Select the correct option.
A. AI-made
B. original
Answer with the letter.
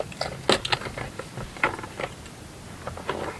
B